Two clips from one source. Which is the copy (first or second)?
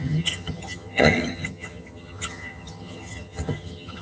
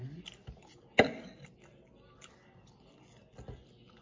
first